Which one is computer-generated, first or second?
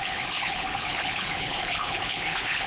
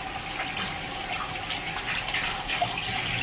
first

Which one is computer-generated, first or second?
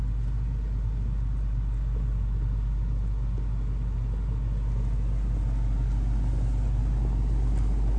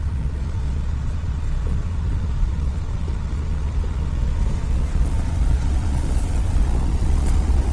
second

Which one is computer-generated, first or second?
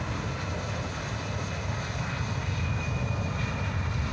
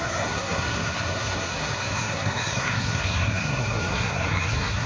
second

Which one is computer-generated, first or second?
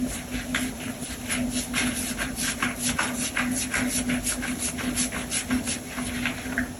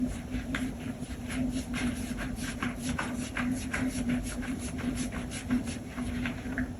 second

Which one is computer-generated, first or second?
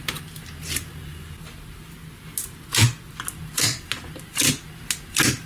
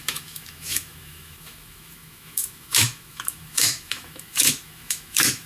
second